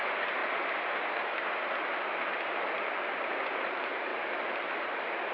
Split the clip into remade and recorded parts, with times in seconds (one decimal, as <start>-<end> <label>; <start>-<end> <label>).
0.0-0.4 remade; 0.4-2.3 recorded; 2.3-4.1 remade; 4.1-5.3 recorded